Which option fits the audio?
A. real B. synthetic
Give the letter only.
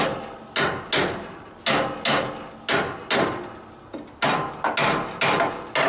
A